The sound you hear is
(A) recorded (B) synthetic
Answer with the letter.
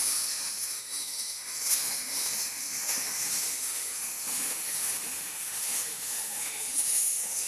B